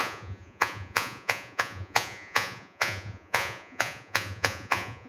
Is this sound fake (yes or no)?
yes